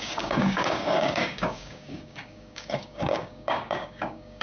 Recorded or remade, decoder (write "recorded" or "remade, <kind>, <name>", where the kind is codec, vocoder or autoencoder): remade, codec, DAC